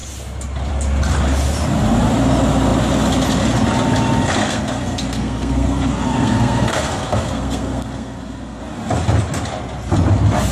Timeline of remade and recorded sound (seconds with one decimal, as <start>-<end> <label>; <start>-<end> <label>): 0.0-4.4 recorded; 4.4-8.6 remade; 8.6-10.5 recorded